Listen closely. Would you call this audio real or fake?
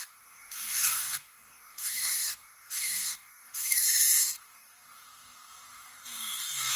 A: fake